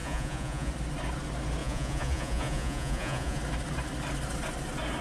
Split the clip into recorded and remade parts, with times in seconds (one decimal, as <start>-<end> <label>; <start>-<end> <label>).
0.0-0.7 remade; 0.7-1.6 recorded; 1.6-3.4 remade; 3.4-5.0 recorded